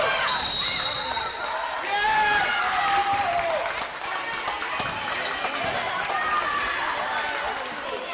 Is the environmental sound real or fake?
real